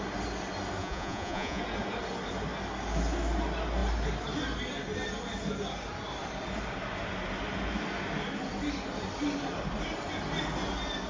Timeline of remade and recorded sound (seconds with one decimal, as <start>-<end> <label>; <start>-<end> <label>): 0.0-0.8 recorded; 0.8-1.6 remade; 1.6-11.1 recorded